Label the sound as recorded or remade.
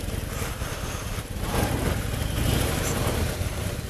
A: remade